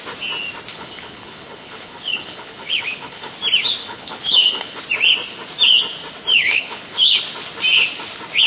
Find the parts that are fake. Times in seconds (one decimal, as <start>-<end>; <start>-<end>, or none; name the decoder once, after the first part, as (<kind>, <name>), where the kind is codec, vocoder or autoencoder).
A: 0.7-3.3 (codec, HILCodec); 3.8-4.8; 6.3-7.2